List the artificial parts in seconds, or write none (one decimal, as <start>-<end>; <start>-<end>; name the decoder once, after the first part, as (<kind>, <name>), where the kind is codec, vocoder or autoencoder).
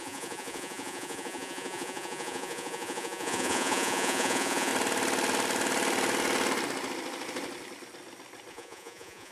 0.0-4.7 (vocoder, Vocos); 8.5-9.3